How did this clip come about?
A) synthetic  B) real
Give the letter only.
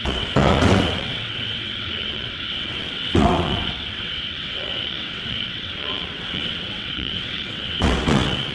A